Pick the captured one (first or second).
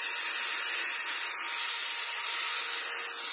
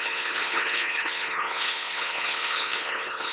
first